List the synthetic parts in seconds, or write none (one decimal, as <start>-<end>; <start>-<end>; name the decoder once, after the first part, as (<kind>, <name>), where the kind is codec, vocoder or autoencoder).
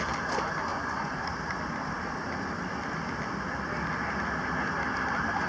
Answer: 0.7-1.2 (vocoder, Vocos)